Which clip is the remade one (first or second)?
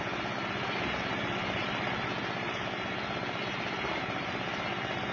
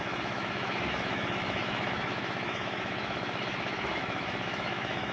second